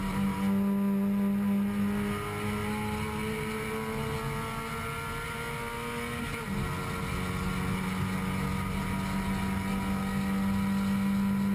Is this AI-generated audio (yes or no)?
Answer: no